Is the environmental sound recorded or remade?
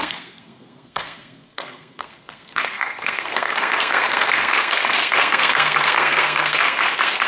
remade